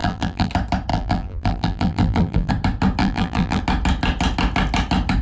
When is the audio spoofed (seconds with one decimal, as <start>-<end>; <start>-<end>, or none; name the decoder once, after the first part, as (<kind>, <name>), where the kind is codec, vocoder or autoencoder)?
0.0-0.5 (vocoder, BigVGAN v2); 0.9-2.5; 3.0-3.6